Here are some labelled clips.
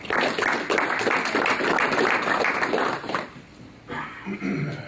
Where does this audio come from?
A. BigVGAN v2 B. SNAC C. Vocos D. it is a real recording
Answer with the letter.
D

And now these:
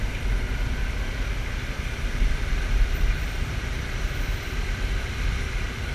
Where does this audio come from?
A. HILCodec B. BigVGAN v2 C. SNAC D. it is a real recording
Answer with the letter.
B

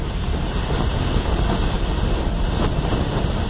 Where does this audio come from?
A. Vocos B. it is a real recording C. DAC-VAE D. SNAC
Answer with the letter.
B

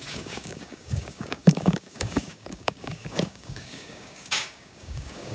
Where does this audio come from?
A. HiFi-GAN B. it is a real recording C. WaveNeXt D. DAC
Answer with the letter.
D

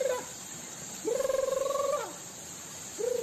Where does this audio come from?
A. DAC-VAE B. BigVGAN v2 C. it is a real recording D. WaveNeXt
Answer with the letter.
B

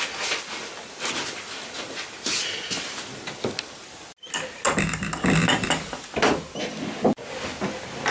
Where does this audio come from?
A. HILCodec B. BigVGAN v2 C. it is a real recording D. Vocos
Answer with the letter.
C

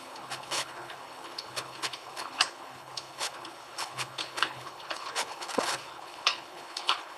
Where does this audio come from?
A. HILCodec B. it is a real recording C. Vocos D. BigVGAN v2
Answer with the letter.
A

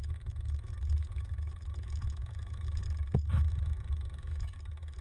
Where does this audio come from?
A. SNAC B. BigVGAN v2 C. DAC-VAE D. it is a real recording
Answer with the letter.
C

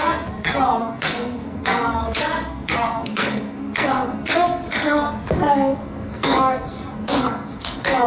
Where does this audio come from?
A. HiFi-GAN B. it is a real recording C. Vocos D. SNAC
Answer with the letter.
D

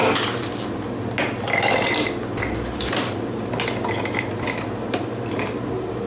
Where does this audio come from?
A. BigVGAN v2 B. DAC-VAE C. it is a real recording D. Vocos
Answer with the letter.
C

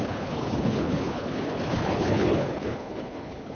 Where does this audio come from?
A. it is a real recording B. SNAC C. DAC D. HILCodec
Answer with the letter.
D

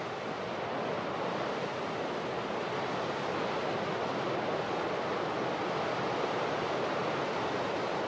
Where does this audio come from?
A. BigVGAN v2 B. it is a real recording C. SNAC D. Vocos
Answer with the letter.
B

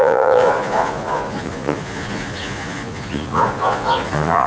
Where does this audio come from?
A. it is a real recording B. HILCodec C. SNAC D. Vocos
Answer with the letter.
D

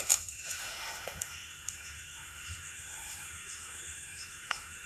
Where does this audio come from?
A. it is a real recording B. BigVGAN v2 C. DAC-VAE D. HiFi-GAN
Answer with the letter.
C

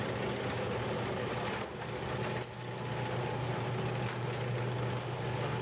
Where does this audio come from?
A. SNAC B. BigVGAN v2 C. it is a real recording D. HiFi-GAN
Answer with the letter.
C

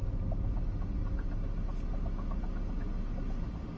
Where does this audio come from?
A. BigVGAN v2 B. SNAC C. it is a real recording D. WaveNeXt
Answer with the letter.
C